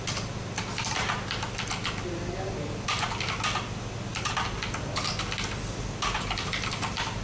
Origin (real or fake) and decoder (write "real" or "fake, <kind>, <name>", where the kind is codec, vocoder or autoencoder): real